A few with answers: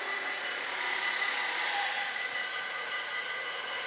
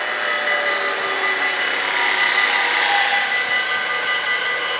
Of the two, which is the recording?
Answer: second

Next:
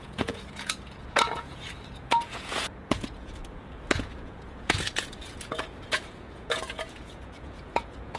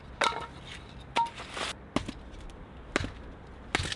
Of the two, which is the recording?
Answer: second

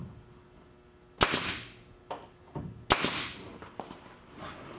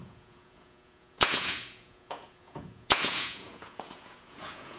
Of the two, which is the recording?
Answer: first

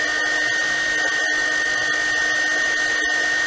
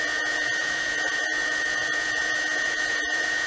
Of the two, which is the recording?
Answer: first